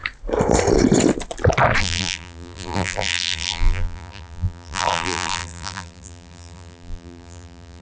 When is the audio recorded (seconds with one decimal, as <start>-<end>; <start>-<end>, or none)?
0.0-1.8